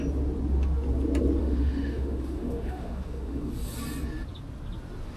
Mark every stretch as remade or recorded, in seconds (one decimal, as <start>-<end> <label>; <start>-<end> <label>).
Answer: 0.0-1.4 recorded; 1.4-3.5 remade; 3.5-5.2 recorded

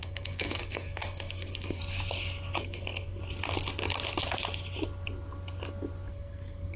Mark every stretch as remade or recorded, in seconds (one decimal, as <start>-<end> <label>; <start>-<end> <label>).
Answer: 0.0-1.8 remade; 1.8-2.6 recorded; 2.6-3.2 remade; 3.2-6.1 recorded; 6.1-6.8 remade

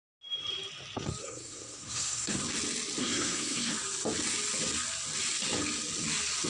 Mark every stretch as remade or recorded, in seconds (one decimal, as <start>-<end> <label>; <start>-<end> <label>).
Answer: 0.0-1.2 recorded; 1.2-2.4 remade; 2.4-3.0 recorded; 3.0-3.7 remade; 3.7-6.5 recorded

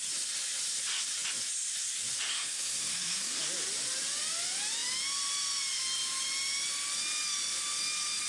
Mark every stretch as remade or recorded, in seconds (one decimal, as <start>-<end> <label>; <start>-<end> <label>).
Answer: 0.0-2.3 recorded; 2.3-3.4 remade; 3.4-8.3 recorded

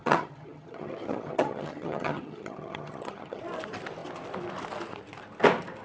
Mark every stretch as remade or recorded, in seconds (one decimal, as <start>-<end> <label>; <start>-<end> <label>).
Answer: 0.0-3.4 remade; 3.4-5.8 recorded

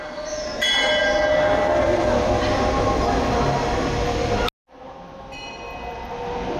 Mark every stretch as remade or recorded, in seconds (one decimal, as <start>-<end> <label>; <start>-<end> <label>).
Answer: 0.0-6.6 recorded

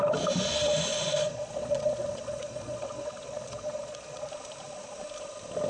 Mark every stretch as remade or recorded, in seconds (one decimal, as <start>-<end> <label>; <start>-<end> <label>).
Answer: 0.0-0.9 recorded; 0.9-4.3 remade; 4.3-5.7 recorded